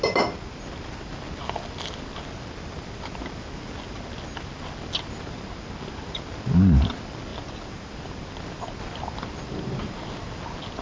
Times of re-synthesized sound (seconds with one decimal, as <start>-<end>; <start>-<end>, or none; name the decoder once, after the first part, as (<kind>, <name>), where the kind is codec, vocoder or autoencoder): none